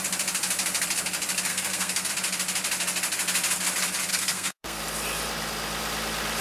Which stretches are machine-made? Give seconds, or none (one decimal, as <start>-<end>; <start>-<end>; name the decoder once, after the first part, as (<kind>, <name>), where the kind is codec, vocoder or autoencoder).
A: 1.5-2.1 (codec, SNAC); 4.1-4.8